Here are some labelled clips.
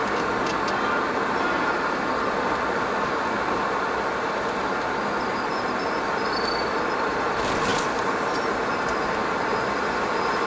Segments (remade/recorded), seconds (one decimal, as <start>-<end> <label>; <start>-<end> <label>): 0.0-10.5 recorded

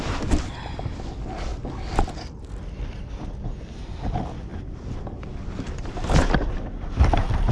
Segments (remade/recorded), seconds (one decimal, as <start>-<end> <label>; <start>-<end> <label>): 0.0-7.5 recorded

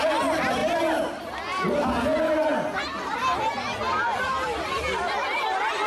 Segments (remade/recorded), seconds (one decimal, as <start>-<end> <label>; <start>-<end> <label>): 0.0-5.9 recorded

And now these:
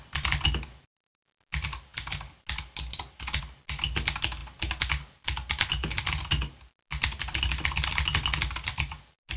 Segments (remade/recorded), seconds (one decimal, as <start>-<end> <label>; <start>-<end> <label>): 0.0-9.4 recorded